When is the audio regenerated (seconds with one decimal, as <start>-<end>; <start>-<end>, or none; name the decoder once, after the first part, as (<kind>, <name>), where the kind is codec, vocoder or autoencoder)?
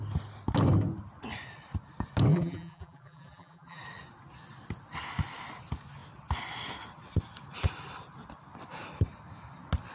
2.3-3.8 (vocoder, BigVGAN v2)